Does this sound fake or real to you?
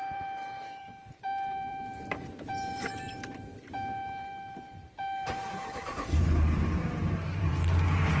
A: fake